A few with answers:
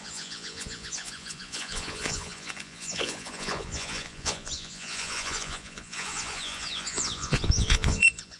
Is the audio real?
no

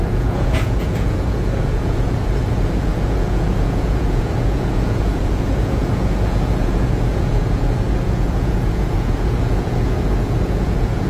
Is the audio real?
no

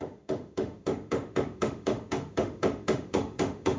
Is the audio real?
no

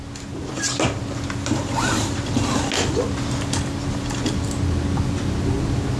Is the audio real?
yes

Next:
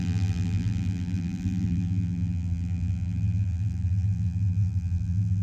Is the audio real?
no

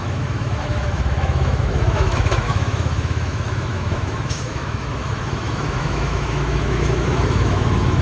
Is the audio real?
no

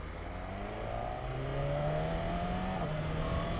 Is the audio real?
yes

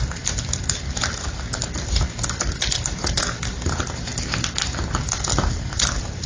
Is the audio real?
no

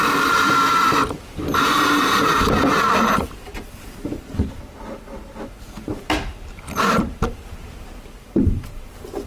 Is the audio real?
no